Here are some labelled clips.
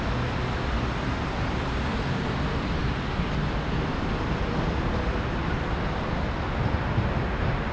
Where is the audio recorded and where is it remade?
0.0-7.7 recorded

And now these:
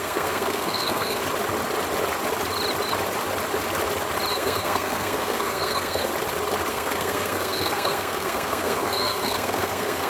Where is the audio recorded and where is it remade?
0.0-1.2 remade; 1.2-4.3 recorded; 4.3-6.1 remade; 6.1-6.7 recorded; 6.7-10.1 remade

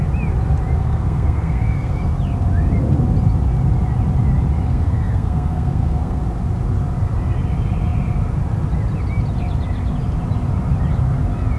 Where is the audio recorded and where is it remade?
0.0-0.8 recorded; 0.8-2.0 remade; 2.0-4.7 recorded; 4.7-6.2 remade; 6.2-11.6 recorded

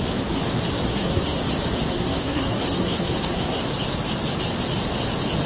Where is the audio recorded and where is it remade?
0.0-0.9 recorded; 0.9-1.4 remade; 1.4-1.9 recorded; 1.9-3.6 remade; 3.6-5.5 recorded

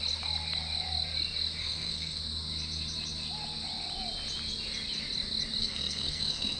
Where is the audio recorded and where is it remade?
0.0-1.6 recorded; 1.6-2.2 remade; 2.2-5.6 recorded; 5.6-6.6 remade

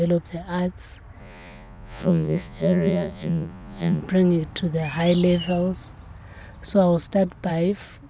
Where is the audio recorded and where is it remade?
0.0-1.2 recorded; 1.2-4.0 remade; 4.0-8.1 recorded

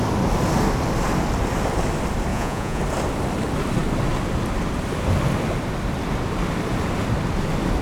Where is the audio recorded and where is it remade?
0.0-2.3 recorded; 2.3-2.8 remade; 2.8-7.8 recorded

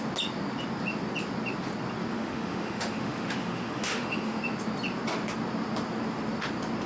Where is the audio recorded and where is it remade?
0.0-2.1 recorded; 2.1-4.4 remade; 4.4-6.9 recorded